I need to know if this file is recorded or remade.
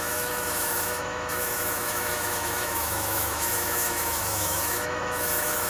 remade